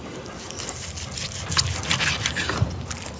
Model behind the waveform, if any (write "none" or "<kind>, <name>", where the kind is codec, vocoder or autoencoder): none